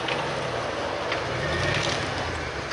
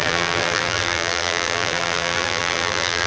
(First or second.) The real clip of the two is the first